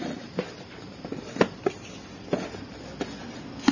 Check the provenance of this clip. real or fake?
real